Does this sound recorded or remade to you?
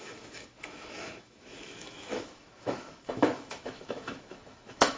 remade